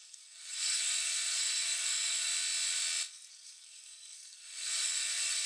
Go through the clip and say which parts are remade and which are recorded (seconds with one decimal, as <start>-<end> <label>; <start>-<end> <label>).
0.0-2.3 remade; 2.3-3.3 recorded; 3.3-5.5 remade